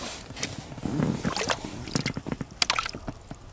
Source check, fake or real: real